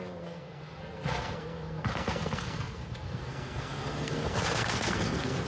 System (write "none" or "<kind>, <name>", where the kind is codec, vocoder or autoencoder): codec, SNAC